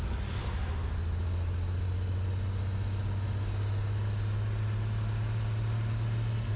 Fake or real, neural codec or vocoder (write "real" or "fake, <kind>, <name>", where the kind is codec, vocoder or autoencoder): real